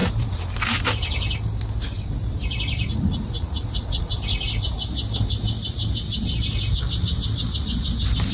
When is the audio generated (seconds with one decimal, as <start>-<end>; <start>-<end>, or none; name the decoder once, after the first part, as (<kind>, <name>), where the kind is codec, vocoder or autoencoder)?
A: 2.9-4.1 (vocoder, Vocos)